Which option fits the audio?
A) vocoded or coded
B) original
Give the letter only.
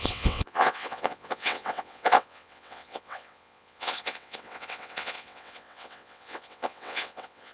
A